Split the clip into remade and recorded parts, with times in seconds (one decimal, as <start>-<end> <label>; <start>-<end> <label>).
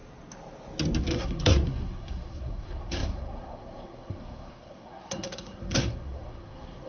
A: 0.0-1.0 recorded; 1.0-6.9 remade